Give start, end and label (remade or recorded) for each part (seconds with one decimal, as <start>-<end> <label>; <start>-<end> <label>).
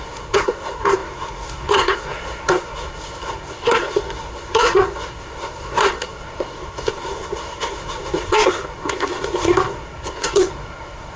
0.0-11.2 remade